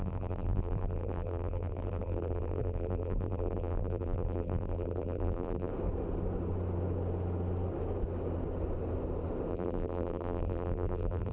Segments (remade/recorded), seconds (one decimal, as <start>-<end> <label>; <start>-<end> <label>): 0.0-5.7 remade; 5.7-9.5 recorded; 9.5-11.3 remade